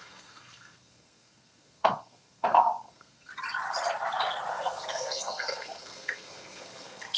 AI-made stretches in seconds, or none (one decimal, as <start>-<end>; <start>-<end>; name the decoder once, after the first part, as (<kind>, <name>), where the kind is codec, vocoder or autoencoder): 0.0-3.3 (codec, SNAC); 4.5-7.2